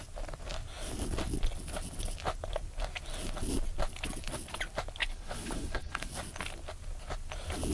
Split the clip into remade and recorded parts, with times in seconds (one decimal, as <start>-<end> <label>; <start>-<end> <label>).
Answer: 0.0-5.0 recorded; 5.0-6.1 remade; 6.1-7.7 recorded